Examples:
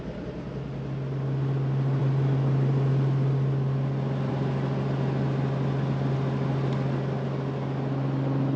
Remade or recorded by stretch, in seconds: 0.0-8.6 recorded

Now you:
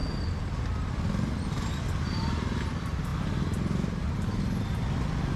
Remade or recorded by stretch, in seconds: 0.0-5.4 recorded

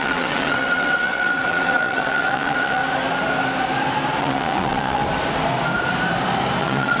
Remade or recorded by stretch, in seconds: 0.0-2.8 remade; 2.8-4.2 recorded; 4.2-5.0 remade; 5.0-6.6 recorded; 6.6-7.0 remade

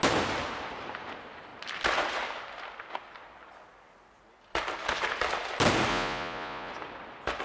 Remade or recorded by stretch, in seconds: 0.0-5.9 recorded; 5.9-6.7 remade; 6.7-7.4 recorded

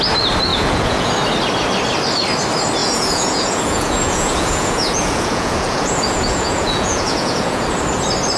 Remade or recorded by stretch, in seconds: 0.0-0.5 recorded; 0.5-1.1 remade; 1.1-2.8 recorded; 2.8-7.6 remade; 7.6-8.4 recorded

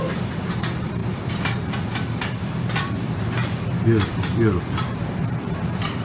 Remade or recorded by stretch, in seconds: 0.0-6.0 remade

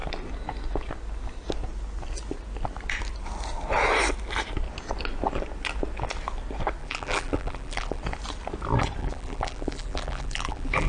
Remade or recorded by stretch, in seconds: 0.0-6.8 recorded; 6.8-8.0 remade; 8.0-9.0 recorded; 9.0-10.9 remade